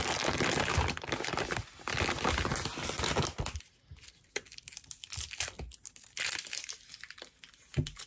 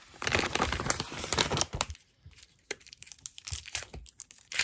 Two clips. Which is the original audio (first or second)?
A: first